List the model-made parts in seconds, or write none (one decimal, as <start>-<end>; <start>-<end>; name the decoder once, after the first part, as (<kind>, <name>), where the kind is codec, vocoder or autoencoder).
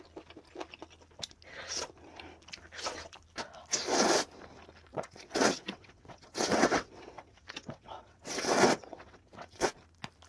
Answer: 4.9-9.7 (vocoder, WaveNeXt)